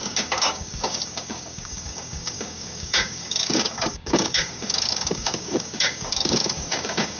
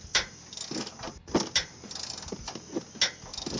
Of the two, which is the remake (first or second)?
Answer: first